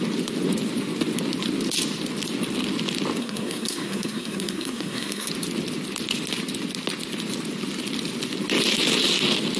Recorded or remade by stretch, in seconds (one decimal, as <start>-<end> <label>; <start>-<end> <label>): 0.0-3.2 recorded; 3.2-5.3 remade; 5.3-9.6 recorded